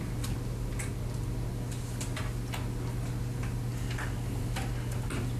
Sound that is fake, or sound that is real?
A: real